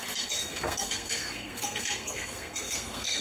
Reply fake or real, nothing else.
fake